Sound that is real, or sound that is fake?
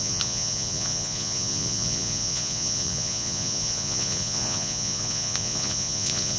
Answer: fake